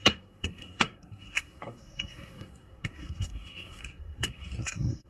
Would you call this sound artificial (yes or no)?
yes